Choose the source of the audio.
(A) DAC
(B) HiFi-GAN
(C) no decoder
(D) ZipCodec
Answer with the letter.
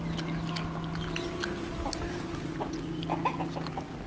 C